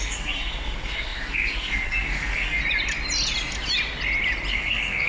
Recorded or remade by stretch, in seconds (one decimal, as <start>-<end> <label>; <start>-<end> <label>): 0.0-2.6 remade; 2.6-4.5 recorded; 4.5-5.1 remade